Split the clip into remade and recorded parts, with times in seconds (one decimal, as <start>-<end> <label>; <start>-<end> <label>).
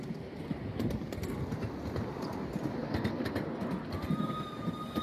0.0-5.0 recorded